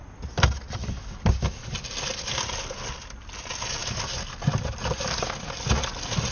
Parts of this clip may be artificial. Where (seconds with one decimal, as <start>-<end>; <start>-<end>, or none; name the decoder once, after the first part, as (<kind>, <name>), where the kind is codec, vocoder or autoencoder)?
none